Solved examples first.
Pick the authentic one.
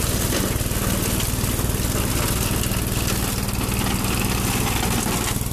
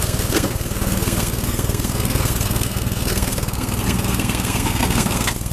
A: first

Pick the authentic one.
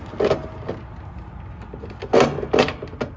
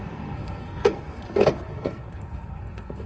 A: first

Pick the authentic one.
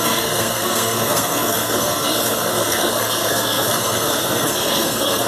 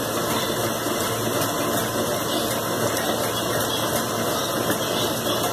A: second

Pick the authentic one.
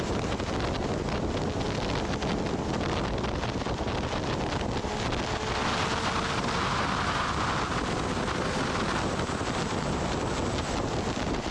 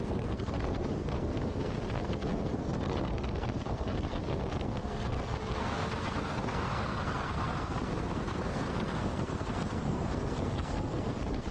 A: first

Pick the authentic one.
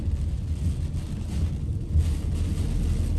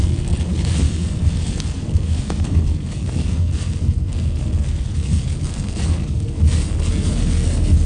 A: first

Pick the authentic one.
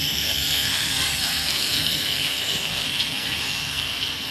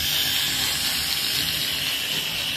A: second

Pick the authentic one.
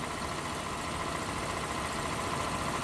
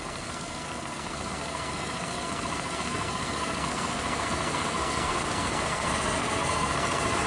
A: first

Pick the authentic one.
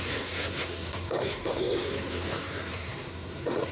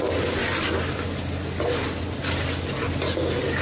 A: second